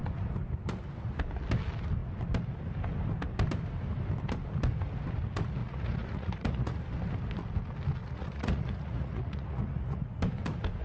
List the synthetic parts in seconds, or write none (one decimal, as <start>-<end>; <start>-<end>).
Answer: 5.6-6.8; 8.0-10.0